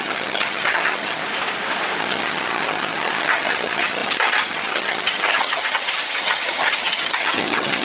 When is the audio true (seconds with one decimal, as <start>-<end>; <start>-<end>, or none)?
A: 1.2-2.0